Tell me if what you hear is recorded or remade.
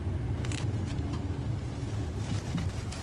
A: remade